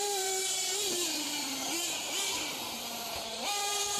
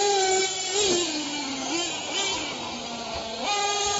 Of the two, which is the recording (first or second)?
second